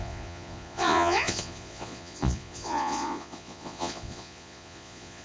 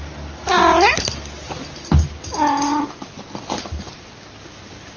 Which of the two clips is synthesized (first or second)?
first